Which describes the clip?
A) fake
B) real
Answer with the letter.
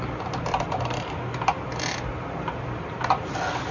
B